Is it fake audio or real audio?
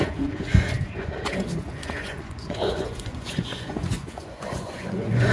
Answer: fake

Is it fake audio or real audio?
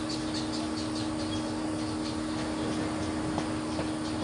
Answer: real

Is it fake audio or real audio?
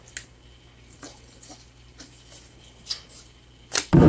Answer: real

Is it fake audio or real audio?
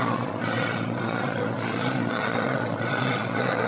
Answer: fake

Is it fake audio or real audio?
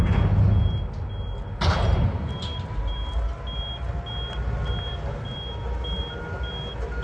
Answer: real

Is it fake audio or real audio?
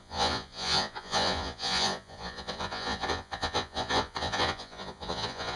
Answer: fake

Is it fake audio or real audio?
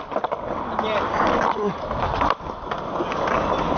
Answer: real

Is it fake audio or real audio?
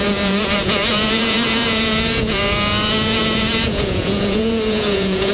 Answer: fake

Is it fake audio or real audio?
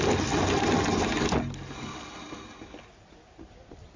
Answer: real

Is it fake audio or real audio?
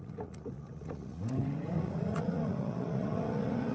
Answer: fake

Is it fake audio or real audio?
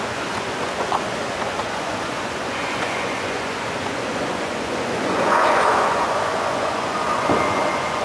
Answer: fake